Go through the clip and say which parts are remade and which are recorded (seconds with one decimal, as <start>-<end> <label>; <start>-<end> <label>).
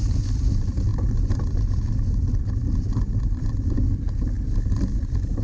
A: 0.0-5.4 recorded